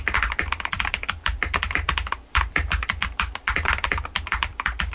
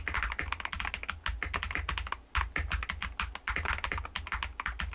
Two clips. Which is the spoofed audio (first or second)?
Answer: first